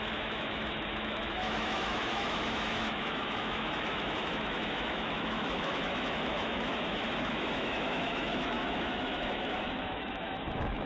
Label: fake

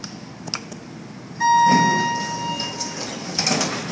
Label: real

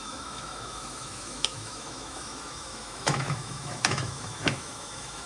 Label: fake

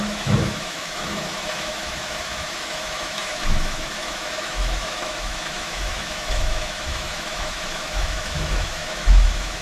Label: fake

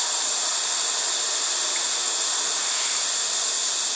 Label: real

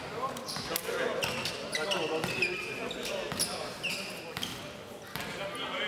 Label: real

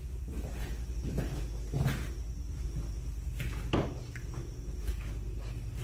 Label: real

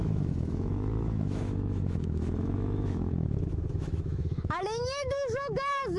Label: fake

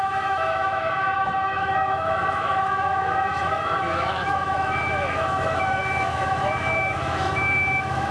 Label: fake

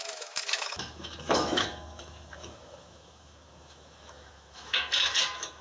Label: fake